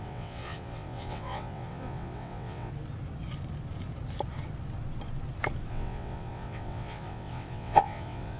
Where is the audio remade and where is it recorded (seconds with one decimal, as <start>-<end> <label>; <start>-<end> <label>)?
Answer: 0.0-2.7 remade; 2.7-5.7 recorded; 5.7-8.4 remade